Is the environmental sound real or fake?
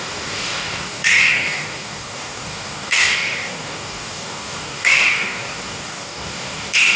fake